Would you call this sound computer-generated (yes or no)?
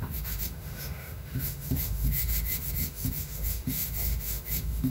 yes